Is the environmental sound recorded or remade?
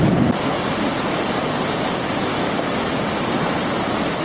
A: recorded